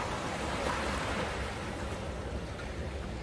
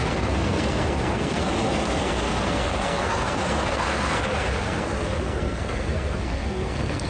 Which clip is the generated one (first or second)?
second